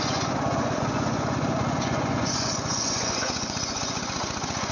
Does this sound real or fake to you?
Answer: fake